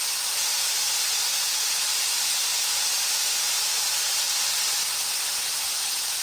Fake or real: real